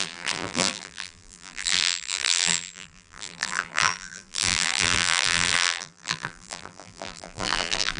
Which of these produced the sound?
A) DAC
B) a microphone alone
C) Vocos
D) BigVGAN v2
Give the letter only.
D